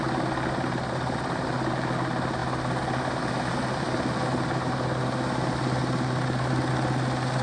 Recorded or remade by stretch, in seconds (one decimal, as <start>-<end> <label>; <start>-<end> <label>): 0.0-7.4 recorded

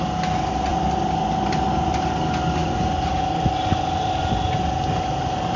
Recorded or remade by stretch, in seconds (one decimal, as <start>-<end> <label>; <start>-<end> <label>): 0.0-5.6 recorded

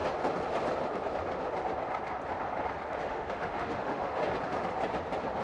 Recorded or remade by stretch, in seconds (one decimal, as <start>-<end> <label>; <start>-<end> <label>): 0.0-3.0 recorded; 3.0-4.1 remade; 4.1-5.4 recorded

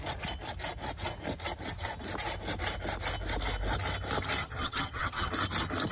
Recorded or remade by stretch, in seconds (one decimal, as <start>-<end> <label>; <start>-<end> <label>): 0.0-4.4 recorded; 4.4-5.3 remade; 5.3-5.9 recorded

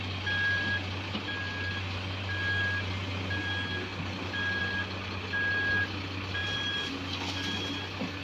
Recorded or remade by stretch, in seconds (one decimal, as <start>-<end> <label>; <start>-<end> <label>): 0.0-6.4 recorded; 6.4-6.9 remade; 6.9-8.2 recorded